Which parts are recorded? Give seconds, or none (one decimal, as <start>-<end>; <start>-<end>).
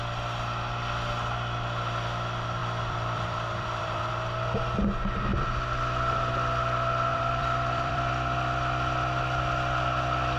0.0-2.6; 4.1-7.1; 8.1-10.4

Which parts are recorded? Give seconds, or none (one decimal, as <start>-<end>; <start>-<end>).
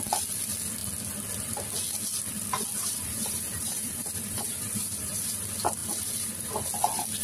0.0-2.8; 5.3-5.8; 6.5-7.2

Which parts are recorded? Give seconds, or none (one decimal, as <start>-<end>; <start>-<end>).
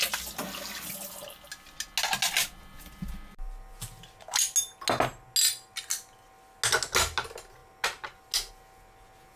0.0-9.4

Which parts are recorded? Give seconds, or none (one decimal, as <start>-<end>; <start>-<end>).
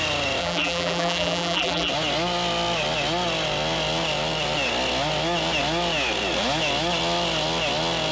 0.0-0.4; 1.9-8.1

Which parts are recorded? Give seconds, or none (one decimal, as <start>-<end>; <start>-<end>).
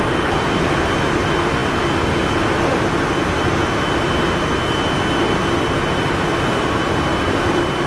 0.0-7.1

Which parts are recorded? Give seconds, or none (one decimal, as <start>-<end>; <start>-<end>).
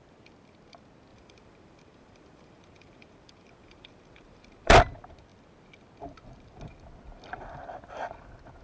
0.0-1.1; 4.8-8.6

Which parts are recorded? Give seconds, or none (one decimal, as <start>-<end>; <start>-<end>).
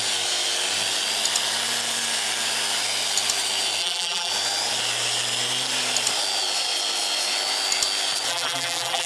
0.0-3.8; 4.3-8.3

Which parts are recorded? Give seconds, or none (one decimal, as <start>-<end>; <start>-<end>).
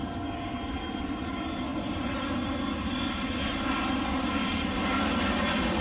0.0-5.8